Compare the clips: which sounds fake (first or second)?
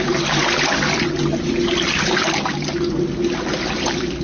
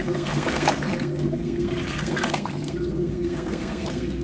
second